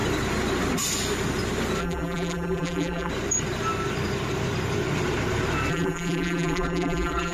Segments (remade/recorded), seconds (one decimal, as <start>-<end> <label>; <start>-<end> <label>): 0.0-1.8 recorded; 1.8-3.1 remade; 3.1-5.7 recorded; 5.7-7.3 remade